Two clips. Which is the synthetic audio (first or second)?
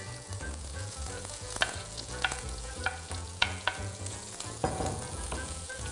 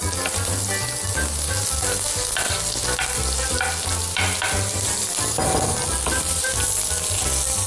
first